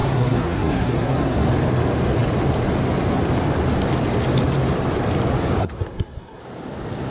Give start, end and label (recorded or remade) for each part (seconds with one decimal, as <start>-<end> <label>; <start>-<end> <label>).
0.0-1.5 remade; 1.5-5.6 recorded; 5.6-6.4 remade; 6.4-7.1 recorded